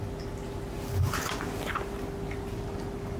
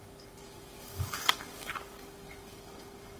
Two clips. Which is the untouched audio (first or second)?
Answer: first